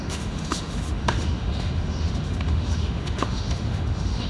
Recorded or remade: remade